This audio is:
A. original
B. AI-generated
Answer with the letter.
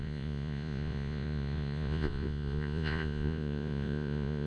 B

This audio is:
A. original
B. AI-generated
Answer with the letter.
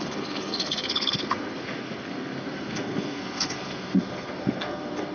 B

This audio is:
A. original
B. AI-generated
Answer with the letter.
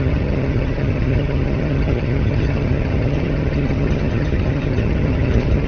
B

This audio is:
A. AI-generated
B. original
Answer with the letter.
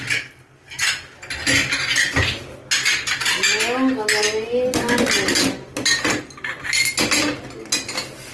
B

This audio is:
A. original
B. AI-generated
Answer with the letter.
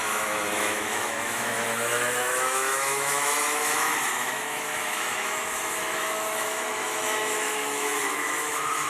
B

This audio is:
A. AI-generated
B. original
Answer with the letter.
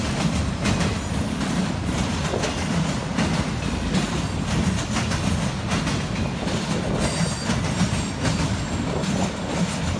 B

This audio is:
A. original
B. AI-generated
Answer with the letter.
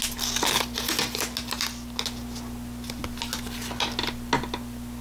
A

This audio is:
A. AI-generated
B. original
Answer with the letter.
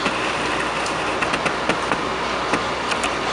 B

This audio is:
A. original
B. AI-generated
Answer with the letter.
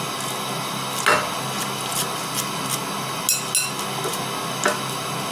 A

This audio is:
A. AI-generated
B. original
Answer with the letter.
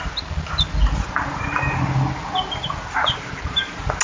B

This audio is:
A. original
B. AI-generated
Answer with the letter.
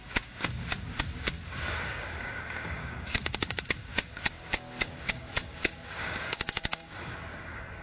B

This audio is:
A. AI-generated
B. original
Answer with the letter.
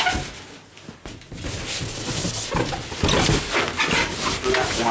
B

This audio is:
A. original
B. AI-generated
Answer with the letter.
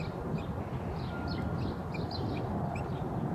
B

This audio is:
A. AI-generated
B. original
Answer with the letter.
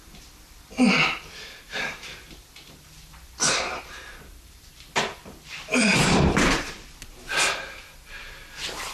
A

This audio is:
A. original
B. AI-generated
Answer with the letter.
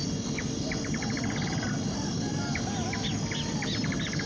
A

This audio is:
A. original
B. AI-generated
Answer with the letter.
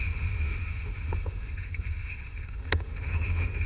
B